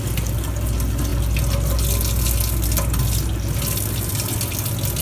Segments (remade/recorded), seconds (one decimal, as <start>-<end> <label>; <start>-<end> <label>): 0.0-5.0 recorded